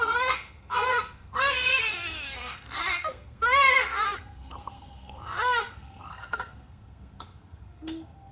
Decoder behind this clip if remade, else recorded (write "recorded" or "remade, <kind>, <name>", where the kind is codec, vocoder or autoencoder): remade, codec, SNAC